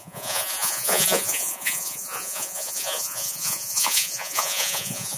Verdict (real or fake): fake